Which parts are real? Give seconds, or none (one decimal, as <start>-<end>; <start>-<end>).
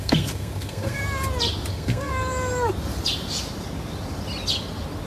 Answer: 1.0-1.7; 2.1-5.1